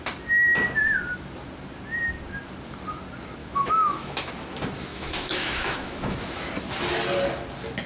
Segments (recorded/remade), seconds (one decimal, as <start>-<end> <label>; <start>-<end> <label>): 0.0-3.4 recorded; 3.4-4.3 remade; 4.3-4.9 recorded; 4.9-6.4 remade; 6.4-7.9 recorded